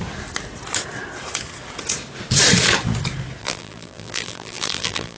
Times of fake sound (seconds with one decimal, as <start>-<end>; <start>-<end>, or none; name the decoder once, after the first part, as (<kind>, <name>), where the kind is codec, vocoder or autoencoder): 3.4-5.2 (vocoder, BigVGAN v2)